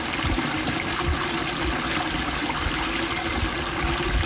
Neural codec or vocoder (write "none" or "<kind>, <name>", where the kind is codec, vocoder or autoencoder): none